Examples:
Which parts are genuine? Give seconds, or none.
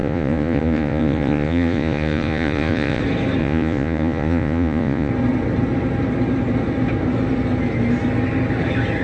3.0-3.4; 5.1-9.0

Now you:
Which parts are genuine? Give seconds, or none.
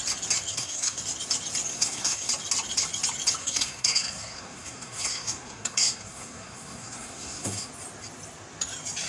0.0-0.5; 1.0-1.7; 2.3-3.4; 7.7-9.1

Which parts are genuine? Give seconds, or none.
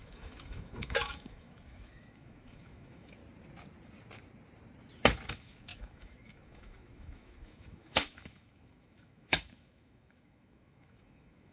3.2-5.3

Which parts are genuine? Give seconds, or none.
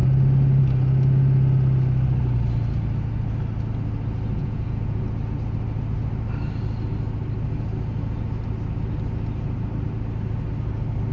0.0-4.4; 5.0-11.1